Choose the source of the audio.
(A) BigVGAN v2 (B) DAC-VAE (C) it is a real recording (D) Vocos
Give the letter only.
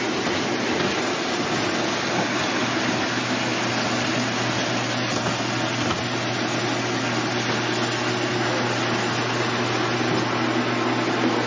C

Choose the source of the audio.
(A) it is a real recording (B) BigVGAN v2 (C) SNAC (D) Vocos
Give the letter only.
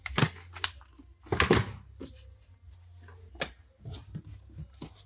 A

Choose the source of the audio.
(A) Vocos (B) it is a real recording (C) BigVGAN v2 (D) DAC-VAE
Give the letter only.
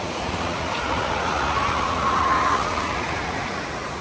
A